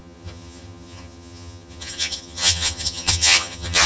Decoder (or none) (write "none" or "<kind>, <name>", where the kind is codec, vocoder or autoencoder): vocoder, HiFi-GAN